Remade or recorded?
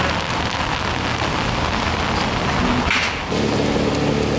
recorded